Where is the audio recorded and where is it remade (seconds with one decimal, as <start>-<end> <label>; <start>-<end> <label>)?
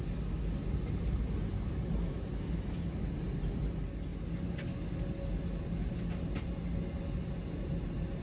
0.0-8.2 recorded